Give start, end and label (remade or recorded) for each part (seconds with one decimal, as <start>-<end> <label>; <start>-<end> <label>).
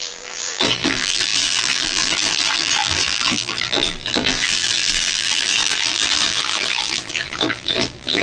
0.0-8.2 remade